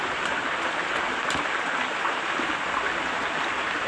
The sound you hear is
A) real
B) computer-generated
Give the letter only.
A